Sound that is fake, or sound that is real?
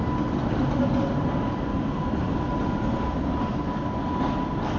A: real